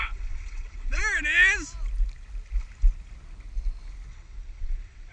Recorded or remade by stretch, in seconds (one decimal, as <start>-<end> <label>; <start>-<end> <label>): 0.0-1.0 remade; 1.0-4.1 recorded; 4.1-5.1 remade